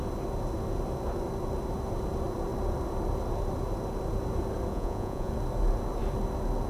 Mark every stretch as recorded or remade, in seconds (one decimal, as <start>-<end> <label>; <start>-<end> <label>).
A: 0.0-4.7 recorded; 4.7-5.3 remade; 5.3-6.7 recorded